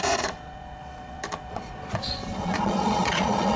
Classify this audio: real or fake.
fake